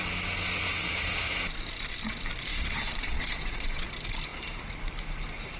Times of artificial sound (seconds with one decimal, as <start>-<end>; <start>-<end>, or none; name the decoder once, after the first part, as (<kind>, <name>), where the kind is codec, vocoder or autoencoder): 0.8-1.3 (vocoder, Vocos); 2.5-3.9